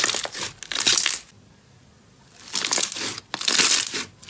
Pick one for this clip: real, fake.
real